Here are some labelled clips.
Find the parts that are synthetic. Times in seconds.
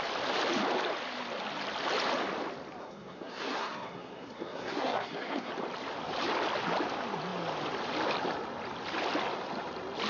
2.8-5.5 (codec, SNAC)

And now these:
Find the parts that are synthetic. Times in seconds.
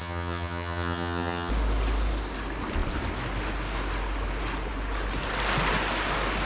0.0-1.5 (vocoder, HiFi-GAN)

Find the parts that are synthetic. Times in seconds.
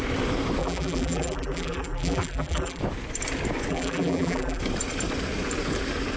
0.6-2.8 (vocoder, BigVGAN v2); 3.7-4.6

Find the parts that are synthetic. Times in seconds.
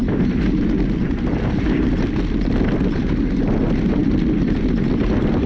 none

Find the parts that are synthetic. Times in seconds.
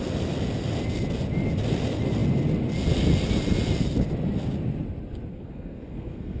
5.3-6.4 (codec, SNAC)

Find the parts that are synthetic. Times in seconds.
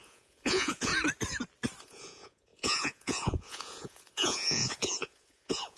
0.0-0.9 (vocoder, Vocos); 1.8-5.8